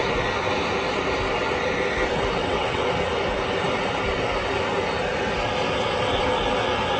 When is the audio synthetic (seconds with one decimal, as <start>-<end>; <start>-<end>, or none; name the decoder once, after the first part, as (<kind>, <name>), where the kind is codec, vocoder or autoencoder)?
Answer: 2.4-2.9 (vocoder, WaveNeXt)